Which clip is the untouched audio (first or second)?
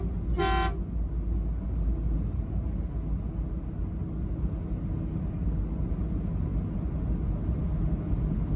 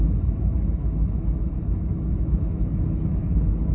first